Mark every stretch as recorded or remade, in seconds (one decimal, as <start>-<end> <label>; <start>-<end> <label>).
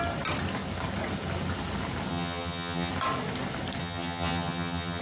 0.0-2.1 recorded; 2.1-2.9 remade; 2.9-3.8 recorded; 3.8-5.0 remade